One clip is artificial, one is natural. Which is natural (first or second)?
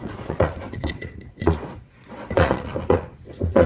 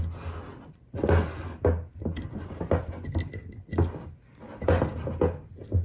second